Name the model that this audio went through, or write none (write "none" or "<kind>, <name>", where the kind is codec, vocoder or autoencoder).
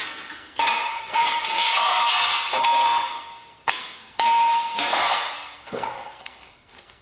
codec, SNAC